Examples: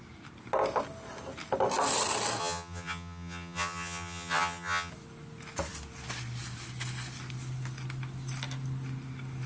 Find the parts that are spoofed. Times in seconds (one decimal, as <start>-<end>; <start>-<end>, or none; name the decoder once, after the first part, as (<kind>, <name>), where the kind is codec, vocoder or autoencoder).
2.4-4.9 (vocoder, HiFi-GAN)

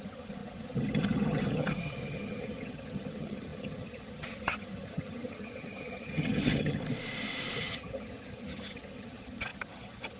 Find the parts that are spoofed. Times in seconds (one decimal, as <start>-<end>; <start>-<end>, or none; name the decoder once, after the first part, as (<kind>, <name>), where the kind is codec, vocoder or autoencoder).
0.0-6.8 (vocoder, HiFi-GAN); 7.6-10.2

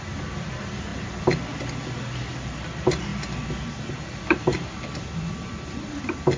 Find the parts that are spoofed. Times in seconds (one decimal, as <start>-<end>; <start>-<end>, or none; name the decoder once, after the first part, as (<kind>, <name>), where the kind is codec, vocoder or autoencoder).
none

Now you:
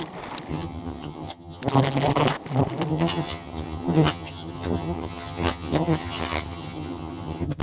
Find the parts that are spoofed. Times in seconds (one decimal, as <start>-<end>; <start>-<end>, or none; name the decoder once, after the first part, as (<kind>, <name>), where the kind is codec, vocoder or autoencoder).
0.5-1.6 (vocoder, HiFi-GAN); 2.9-7.6

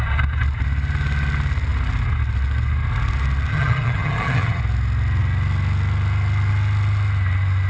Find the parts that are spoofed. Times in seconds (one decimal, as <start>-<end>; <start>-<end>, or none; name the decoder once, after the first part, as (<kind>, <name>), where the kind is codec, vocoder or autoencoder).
3.5-4.6 (vocoder, HiFi-GAN)